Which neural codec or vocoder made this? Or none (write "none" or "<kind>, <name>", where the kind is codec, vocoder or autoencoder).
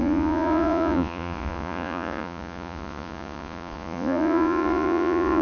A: vocoder, Vocos